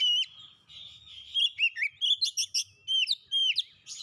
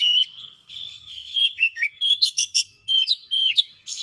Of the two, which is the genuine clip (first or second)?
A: first